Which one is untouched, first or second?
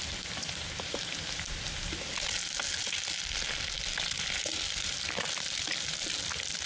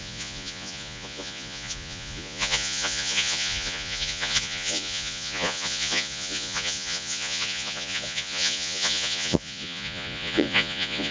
first